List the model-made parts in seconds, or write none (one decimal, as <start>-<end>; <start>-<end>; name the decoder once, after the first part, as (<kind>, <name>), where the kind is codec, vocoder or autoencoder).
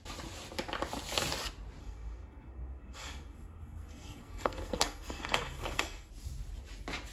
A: 1.8-6.1 (codec, SNAC)